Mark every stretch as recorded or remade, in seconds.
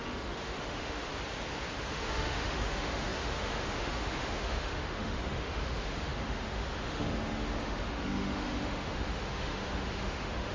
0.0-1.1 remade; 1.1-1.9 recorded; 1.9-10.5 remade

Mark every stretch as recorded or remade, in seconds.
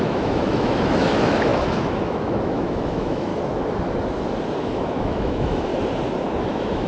0.0-3.3 remade; 3.3-4.6 recorded; 4.6-5.7 remade; 5.7-6.4 recorded; 6.4-6.9 remade